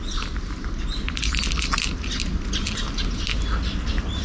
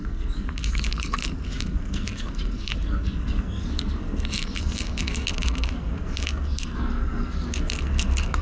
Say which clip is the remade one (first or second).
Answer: second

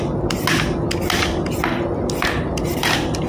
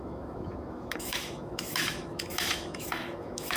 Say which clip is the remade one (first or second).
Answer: second